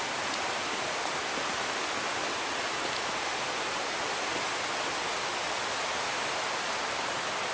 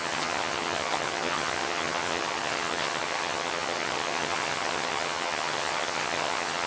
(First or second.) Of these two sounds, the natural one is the first